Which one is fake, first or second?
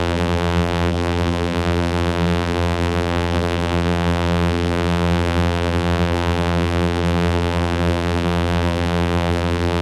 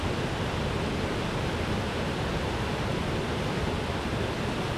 first